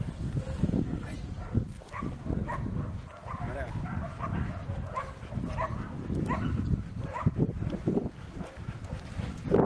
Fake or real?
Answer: real